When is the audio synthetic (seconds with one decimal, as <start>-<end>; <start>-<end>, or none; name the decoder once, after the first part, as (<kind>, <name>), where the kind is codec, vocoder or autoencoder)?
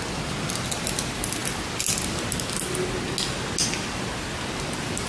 none